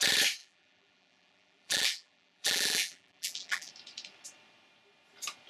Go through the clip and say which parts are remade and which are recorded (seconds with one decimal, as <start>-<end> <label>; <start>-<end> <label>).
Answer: 0.0-0.4 recorded; 0.4-3.7 remade; 3.7-5.5 recorded